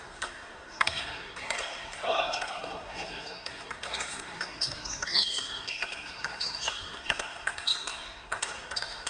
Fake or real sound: fake